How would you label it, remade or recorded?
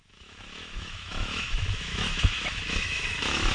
remade